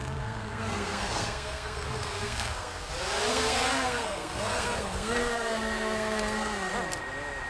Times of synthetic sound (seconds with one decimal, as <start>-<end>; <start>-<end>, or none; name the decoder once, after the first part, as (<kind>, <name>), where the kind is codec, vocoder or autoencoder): 0.0-2.9 (codec, SNAC); 3.3-6.7